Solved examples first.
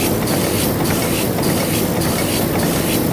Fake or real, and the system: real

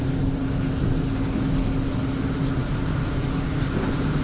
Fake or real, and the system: real